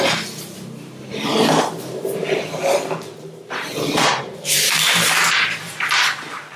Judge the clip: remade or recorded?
remade